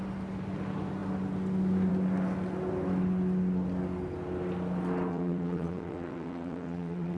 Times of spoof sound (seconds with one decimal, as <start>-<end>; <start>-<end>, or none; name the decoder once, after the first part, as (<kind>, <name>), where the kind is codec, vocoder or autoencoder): 5.1-7.2 (vocoder, WaveNeXt)